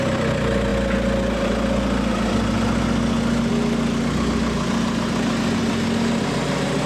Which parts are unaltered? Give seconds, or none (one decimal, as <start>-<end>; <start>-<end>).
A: 0.0-6.9